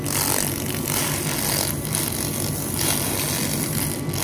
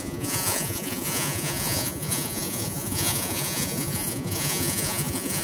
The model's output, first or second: second